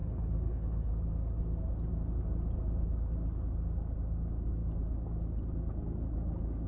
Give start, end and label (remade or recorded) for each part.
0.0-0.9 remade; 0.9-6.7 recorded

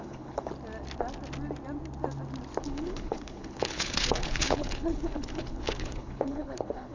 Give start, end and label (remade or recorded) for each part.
0.0-0.5 remade; 0.5-2.6 recorded; 2.6-6.9 remade

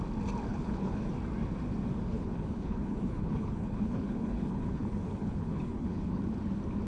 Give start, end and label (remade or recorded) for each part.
0.0-0.5 recorded; 0.5-1.1 remade; 1.1-2.1 recorded; 2.1-6.2 remade; 6.2-6.9 recorded

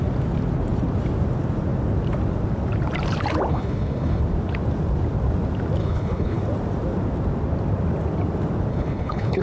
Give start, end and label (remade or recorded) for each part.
0.0-3.5 recorded; 3.5-4.2 remade; 4.2-5.8 recorded; 5.8-6.4 remade; 6.4-8.7 recorded; 8.7-9.4 remade

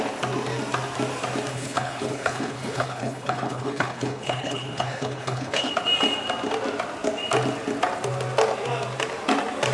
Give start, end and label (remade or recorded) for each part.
0.0-1.5 recorded; 1.5-5.7 remade; 5.7-9.7 recorded

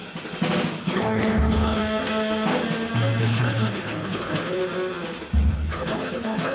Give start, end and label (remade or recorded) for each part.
0.0-0.8 recorded; 0.8-1.8 remade; 1.8-3.2 recorded; 3.2-4.6 remade; 4.6-5.5 recorded; 5.5-6.5 remade

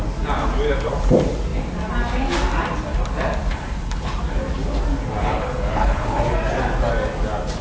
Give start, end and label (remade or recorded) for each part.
0.0-3.4 recorded; 3.4-4.1 remade; 4.1-5.2 recorded; 5.2-6.2 remade; 6.2-7.6 recorded